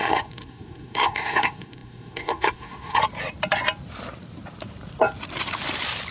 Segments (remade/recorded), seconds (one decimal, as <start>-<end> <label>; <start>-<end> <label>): 0.0-3.0 remade; 3.0-6.1 recorded